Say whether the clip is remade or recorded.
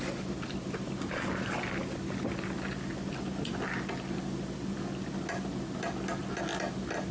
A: recorded